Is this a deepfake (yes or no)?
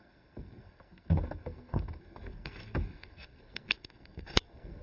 yes